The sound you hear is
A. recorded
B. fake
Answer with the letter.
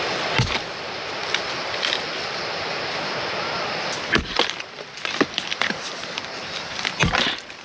B